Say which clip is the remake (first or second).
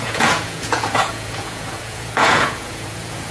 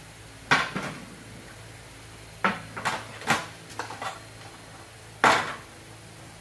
first